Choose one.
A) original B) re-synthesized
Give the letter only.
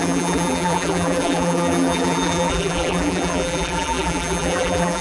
B